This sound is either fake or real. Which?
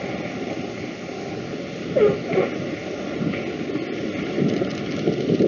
real